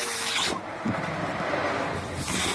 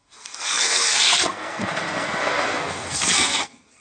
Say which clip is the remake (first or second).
second